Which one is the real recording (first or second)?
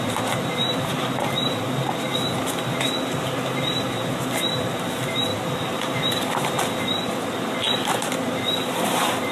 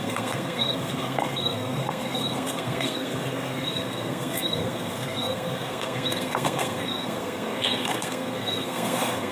first